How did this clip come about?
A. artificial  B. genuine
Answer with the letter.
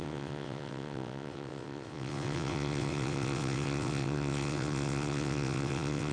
A